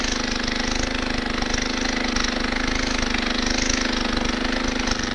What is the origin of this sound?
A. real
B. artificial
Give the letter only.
A